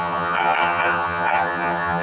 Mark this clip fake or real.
fake